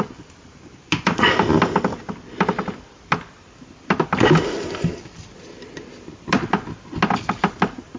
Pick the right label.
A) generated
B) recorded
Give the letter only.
B